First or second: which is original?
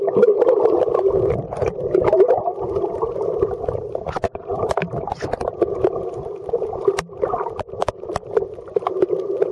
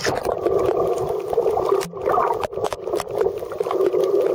second